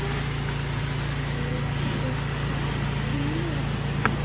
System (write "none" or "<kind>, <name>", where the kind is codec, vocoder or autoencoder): none